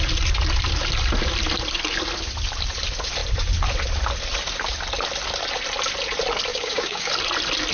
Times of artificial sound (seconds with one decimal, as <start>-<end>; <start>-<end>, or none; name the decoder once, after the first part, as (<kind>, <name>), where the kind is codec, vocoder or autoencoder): 6.5-7.1 (codec, DAC)